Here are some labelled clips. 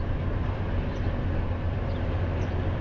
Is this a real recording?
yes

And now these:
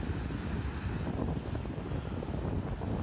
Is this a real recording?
yes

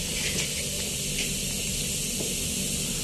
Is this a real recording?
yes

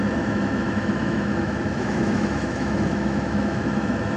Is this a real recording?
no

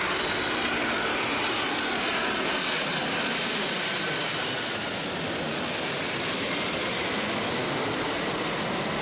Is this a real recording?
yes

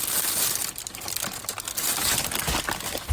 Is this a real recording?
yes